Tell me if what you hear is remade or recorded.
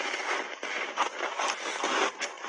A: recorded